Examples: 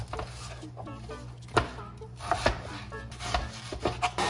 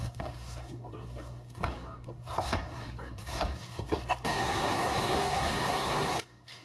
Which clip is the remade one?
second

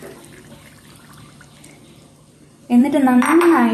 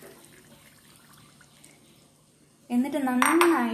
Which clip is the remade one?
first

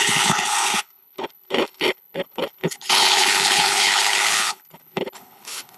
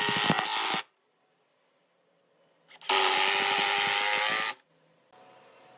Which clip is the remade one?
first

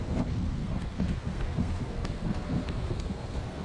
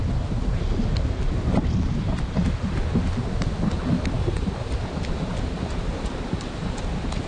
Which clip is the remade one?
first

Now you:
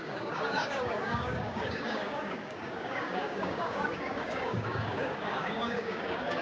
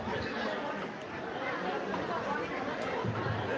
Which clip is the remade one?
first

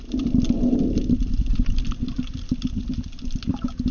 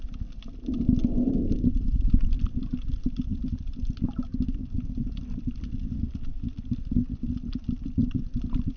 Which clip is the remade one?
second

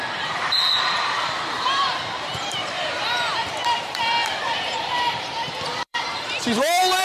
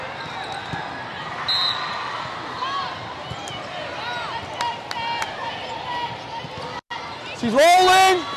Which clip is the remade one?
first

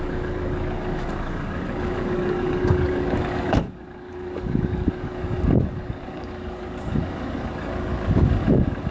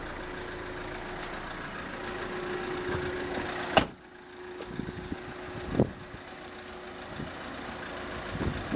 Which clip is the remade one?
first